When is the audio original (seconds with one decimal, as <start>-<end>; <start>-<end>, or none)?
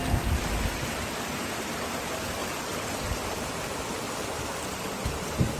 0.0-5.6